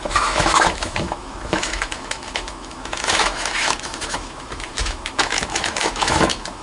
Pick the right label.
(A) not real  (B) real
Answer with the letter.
A